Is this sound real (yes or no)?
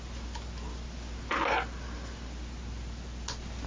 yes